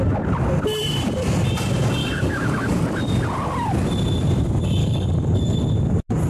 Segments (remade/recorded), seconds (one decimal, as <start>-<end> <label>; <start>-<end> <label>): 0.0-2.0 recorded; 2.0-2.8 remade; 2.8-4.8 recorded; 4.8-5.6 remade; 5.6-6.3 recorded